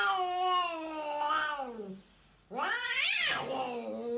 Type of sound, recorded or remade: recorded